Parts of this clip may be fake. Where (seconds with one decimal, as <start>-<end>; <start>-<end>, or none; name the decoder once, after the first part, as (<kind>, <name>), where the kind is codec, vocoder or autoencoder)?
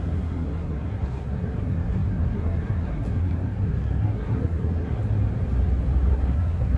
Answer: 0.0-5.0 (codec, SNAC); 6.1-6.8